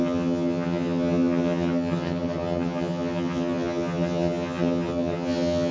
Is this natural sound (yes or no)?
no